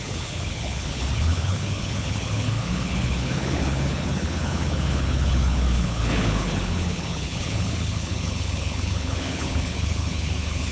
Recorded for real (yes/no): no